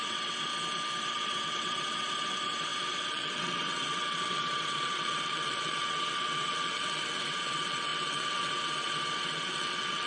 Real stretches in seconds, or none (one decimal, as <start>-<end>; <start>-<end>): 0.5-1.0